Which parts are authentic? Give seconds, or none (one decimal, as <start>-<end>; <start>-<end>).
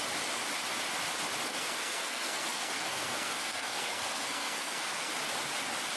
0.0-1.5; 5.1-6.0